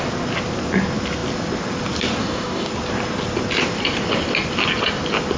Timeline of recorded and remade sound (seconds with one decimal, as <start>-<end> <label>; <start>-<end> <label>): 0.0-2.2 recorded; 2.2-2.7 remade; 2.7-5.4 recorded